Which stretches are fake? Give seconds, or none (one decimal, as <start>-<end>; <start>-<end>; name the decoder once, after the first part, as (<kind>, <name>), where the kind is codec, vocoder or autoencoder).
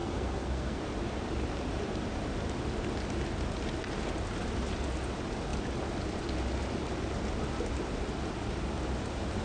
0.0-0.8 (codec, SNAC)